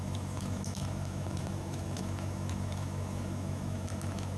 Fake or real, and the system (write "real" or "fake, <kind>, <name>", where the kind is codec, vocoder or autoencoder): fake, autoencoder, DAC-VAE